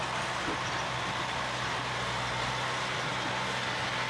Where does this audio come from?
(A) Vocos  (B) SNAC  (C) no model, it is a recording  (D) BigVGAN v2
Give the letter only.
C